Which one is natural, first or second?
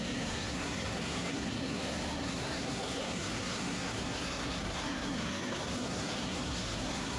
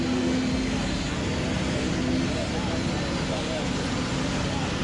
second